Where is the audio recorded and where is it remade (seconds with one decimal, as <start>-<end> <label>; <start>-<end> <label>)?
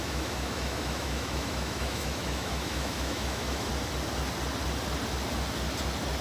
0.0-3.7 remade; 3.7-6.2 recorded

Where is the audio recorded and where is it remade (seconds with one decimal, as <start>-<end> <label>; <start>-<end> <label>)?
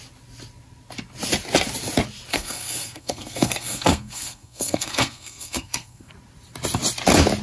0.0-2.3 recorded; 2.3-6.1 remade; 6.1-7.4 recorded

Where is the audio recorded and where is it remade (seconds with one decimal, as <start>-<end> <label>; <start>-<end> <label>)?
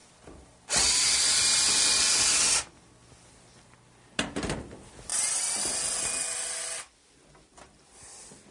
0.0-8.5 recorded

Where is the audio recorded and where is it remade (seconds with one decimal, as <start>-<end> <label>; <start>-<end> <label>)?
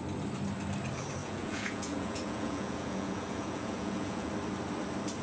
0.0-1.2 recorded; 1.2-4.3 remade; 4.3-5.2 recorded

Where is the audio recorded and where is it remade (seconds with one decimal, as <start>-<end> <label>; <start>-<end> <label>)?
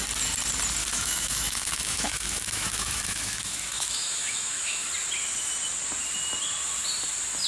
0.0-0.8 recorded; 0.8-4.9 remade; 4.9-7.5 recorded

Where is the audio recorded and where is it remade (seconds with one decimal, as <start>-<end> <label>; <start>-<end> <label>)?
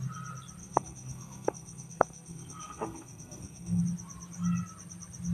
0.0-0.6 recorded; 0.6-3.8 remade; 3.8-5.3 recorded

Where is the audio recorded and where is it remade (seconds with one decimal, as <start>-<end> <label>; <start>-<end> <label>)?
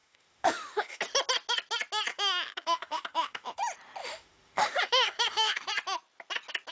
0.0-1.0 remade; 1.0-2.1 recorded; 2.1-3.6 remade; 3.6-4.0 recorded; 4.0-5.7 remade; 5.7-6.7 recorded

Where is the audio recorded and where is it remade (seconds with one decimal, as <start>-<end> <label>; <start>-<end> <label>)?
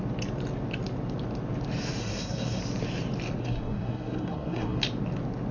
0.0-2.0 recorded; 2.0-2.6 remade; 2.6-3.4 recorded; 3.4-4.8 remade; 4.8-5.5 recorded